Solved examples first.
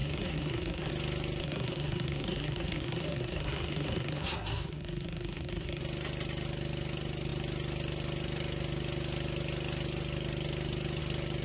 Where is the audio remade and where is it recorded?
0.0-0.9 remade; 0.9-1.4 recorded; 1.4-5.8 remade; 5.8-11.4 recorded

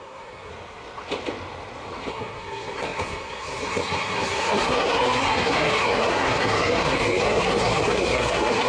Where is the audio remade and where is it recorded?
0.0-0.5 remade; 0.5-2.1 recorded; 2.1-8.7 remade